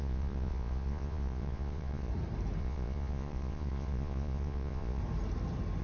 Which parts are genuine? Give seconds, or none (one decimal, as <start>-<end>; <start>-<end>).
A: 2.1-2.6; 5.0-5.8